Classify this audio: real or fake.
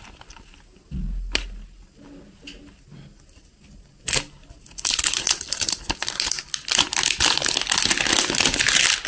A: real